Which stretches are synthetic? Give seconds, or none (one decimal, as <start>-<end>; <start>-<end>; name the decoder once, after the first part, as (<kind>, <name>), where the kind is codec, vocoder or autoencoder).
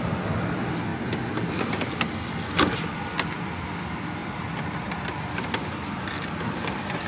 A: 4.2-6.3 (vocoder, BigVGAN v2)